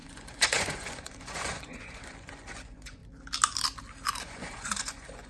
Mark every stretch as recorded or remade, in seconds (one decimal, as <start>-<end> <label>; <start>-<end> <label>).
0.0-3.0 remade; 3.0-4.2 recorded; 4.2-5.3 remade